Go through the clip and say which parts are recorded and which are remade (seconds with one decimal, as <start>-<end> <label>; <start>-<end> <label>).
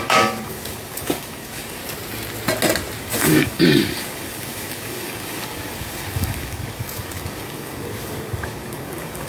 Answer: 0.0-1.8 remade; 1.8-3.0 recorded; 3.0-9.3 remade